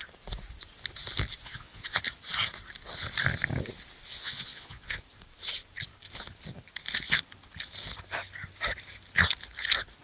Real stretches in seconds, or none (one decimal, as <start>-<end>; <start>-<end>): 0.0-1.4; 2.0-4.1; 5.0-10.0